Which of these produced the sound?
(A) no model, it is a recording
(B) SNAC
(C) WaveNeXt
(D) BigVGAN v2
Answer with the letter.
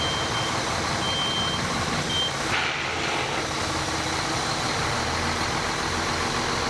A